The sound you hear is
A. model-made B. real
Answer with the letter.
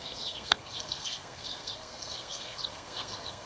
A